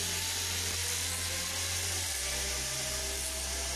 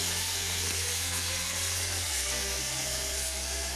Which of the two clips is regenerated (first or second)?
second